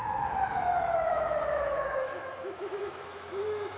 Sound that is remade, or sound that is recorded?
remade